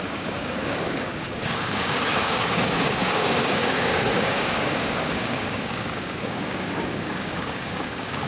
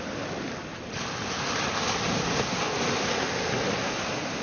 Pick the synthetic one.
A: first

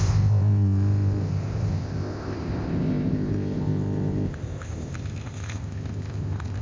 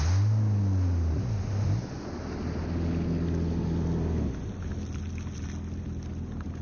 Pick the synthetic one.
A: first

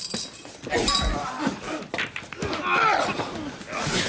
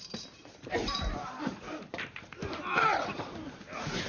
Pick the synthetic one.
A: second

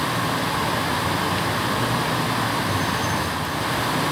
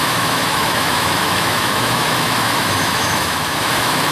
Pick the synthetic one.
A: second